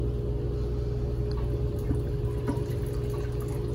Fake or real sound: real